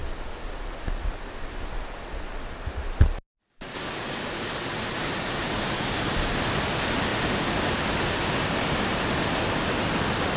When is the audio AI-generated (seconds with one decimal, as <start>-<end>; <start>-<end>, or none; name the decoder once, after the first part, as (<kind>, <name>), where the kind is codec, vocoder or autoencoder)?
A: none